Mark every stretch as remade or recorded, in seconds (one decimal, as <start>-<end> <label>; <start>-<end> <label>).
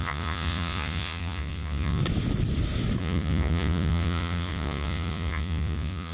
0.0-2.0 remade; 2.0-3.0 recorded; 3.0-6.1 remade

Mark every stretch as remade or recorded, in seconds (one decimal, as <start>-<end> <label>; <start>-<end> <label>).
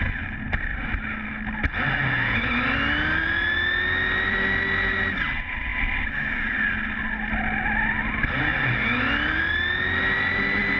0.0-10.8 recorded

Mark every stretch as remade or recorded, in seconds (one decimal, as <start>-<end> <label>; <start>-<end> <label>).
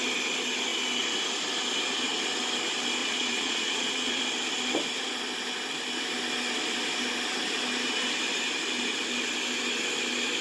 0.0-3.0 recorded; 3.0-4.2 remade; 4.2-10.4 recorded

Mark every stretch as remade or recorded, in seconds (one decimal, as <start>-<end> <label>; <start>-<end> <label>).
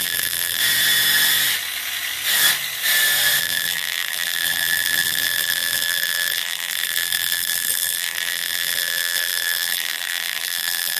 0.0-0.6 remade; 0.6-3.4 recorded; 3.4-11.0 remade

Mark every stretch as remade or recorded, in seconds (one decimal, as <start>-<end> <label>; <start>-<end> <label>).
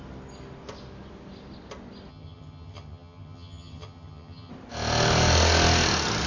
0.0-2.1 recorded; 2.1-4.5 remade; 4.5-6.3 recorded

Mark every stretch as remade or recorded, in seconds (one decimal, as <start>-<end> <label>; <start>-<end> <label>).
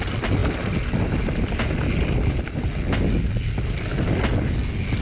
0.0-5.0 recorded